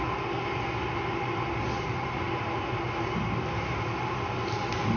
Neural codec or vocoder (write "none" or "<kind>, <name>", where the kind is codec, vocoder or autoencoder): none